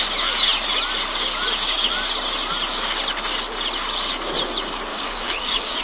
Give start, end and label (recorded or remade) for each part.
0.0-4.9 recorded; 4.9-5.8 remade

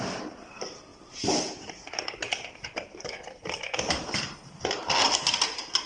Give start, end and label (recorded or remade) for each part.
0.0-5.9 remade

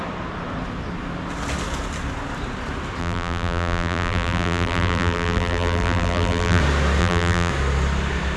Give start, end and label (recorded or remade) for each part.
0.0-3.0 recorded; 3.0-6.6 remade; 6.6-7.0 recorded; 7.0-7.5 remade; 7.5-8.4 recorded

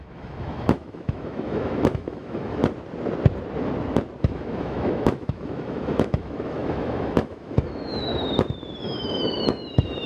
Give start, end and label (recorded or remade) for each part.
0.0-2.6 remade; 2.6-4.2 recorded; 4.2-8.1 remade; 8.1-8.8 recorded; 8.8-10.1 remade

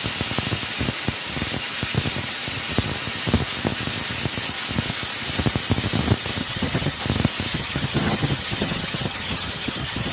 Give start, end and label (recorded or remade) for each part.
0.0-6.4 recorded; 6.4-7.0 remade; 7.0-7.5 recorded; 7.5-10.1 remade

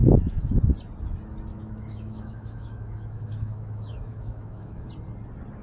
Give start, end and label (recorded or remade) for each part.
0.0-0.6 remade; 0.6-1.5 recorded; 1.5-4.9 remade; 4.9-5.6 recorded